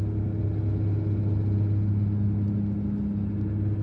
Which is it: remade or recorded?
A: recorded